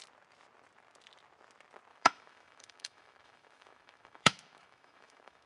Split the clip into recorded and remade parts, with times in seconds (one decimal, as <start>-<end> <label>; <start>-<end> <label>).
0.0-1.9 recorded; 1.9-5.5 remade

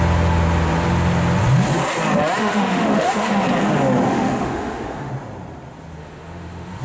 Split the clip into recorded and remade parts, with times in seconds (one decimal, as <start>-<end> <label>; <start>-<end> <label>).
0.0-2.4 recorded; 2.4-3.3 remade; 3.3-4.1 recorded; 4.1-5.1 remade; 5.1-6.0 recorded; 6.0-6.8 remade